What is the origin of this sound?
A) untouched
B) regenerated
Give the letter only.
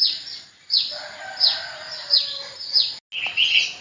A